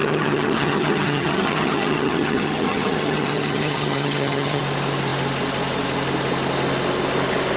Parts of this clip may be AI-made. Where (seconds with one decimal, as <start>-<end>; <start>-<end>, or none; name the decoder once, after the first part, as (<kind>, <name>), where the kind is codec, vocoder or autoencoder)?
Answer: 0.0-4.6 (vocoder, HiFi-GAN)